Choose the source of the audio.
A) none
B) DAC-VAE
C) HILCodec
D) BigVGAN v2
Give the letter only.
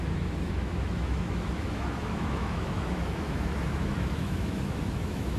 B